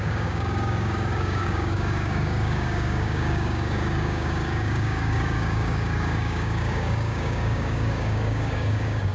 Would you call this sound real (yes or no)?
no